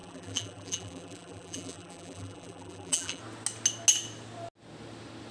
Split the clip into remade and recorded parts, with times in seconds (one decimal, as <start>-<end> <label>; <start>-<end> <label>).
0.0-3.2 remade; 3.2-5.3 recorded